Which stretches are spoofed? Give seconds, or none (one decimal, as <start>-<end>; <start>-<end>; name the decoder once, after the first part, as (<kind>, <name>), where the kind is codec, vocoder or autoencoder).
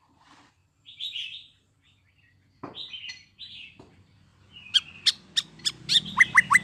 0.6-3.1 (vocoder, BigVGAN v2)